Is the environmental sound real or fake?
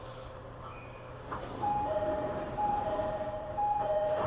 fake